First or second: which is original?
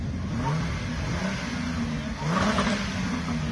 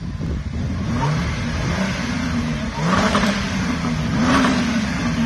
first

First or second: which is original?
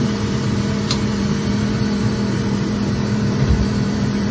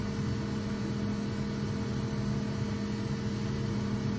second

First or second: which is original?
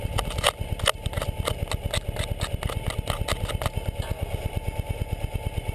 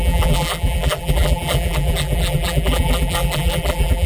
first